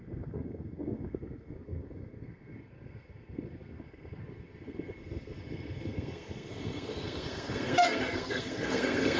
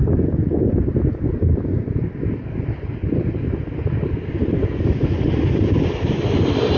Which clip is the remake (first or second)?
first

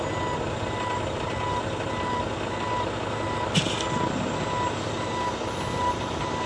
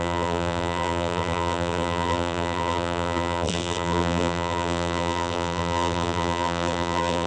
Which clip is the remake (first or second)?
second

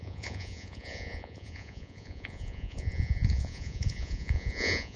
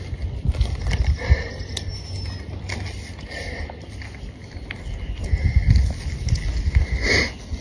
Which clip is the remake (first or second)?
first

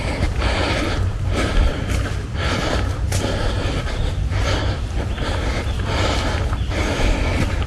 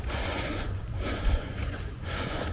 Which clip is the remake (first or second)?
second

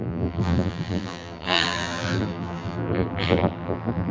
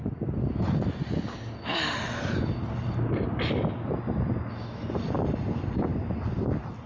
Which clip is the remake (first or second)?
first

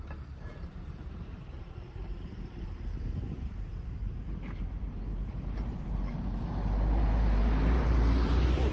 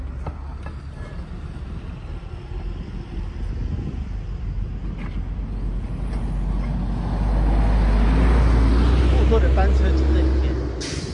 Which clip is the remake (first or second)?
first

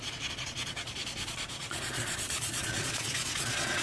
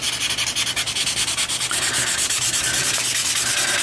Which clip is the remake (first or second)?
first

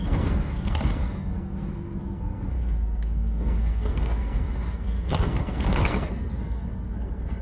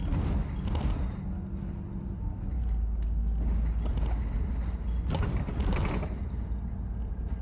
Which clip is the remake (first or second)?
first